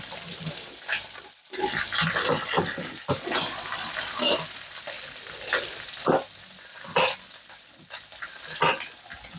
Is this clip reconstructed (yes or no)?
no